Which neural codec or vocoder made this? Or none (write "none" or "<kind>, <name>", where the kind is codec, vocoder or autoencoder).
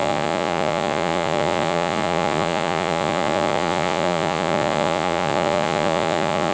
vocoder, Vocos